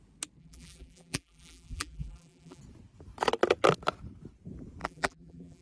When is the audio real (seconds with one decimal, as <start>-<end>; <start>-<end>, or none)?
0.0-0.4; 2.6-4.8